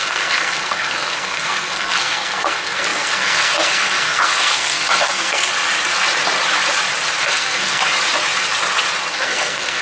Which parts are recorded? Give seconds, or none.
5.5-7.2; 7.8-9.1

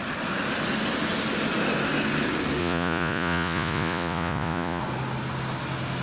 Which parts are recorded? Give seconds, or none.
0.0-2.6; 4.8-6.0

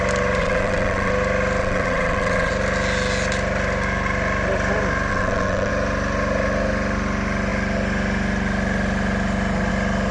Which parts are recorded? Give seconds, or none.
0.0-0.4; 1.1-1.6; 2.5-5.1; 5.7-10.1